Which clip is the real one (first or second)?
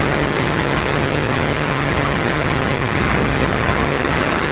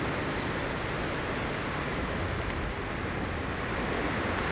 second